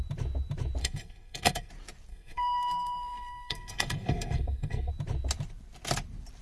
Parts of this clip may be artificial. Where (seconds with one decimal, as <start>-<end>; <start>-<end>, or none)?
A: 0.8-1.7; 2.1-4.9